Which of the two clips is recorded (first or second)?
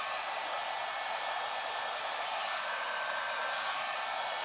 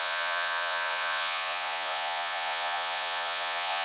first